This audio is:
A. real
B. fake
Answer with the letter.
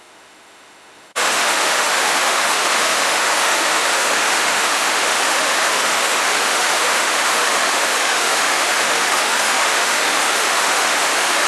B